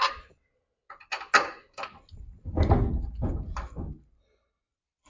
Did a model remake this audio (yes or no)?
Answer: no